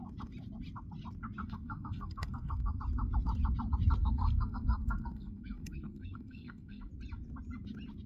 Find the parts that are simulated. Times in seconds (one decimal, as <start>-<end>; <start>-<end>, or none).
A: 1.4-2.8; 4.0-6.9